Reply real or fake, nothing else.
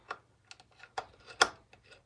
real